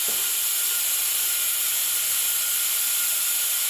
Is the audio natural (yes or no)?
yes